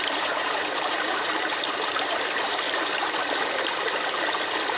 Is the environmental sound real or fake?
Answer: fake